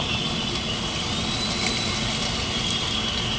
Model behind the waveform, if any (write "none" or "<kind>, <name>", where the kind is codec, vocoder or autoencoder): none